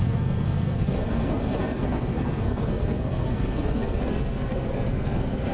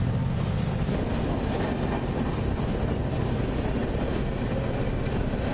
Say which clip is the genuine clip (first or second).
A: second